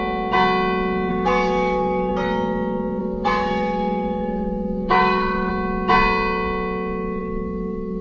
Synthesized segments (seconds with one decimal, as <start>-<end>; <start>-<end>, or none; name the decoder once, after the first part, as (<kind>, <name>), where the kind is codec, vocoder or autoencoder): 1.1-2.1 (codec, DAC); 3.0-5.5; 7.2-8.0